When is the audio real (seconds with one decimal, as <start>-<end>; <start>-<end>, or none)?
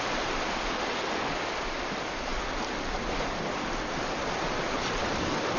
0.0-5.6